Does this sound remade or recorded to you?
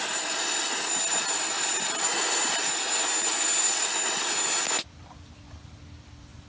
recorded